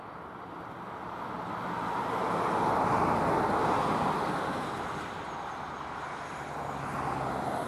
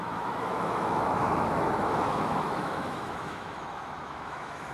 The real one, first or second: first